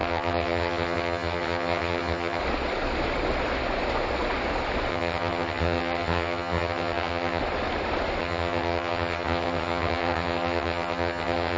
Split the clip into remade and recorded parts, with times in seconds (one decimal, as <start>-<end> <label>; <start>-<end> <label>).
0.0-2.4 remade; 2.4-4.9 recorded; 4.9-7.4 remade; 7.4-8.2 recorded; 8.2-11.6 remade

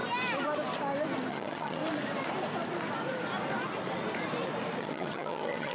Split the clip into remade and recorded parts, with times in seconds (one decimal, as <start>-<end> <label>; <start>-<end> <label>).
0.0-1.3 recorded; 1.3-1.8 remade; 1.8-4.8 recorded; 4.8-5.7 remade

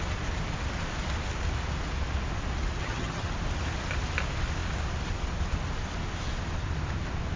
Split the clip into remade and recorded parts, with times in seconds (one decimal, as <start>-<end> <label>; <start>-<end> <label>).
0.0-2.8 recorded; 2.8-3.3 remade; 3.3-7.4 recorded

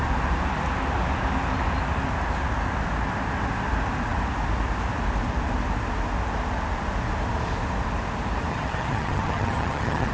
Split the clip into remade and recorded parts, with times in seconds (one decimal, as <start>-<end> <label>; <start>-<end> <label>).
0.0-8.5 recorded; 8.5-10.1 remade

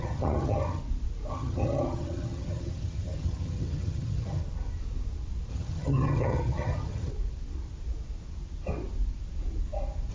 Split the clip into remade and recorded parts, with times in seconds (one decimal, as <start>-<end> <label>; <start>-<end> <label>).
0.0-0.8 remade; 0.8-1.3 recorded; 1.3-4.4 remade; 4.4-5.5 recorded; 5.5-7.1 remade; 7.1-10.1 recorded

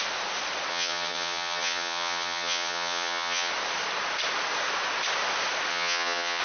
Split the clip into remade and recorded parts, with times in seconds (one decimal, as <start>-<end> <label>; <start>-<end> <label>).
0.0-0.7 recorded; 0.7-3.5 remade; 3.5-5.7 recorded; 5.7-6.4 remade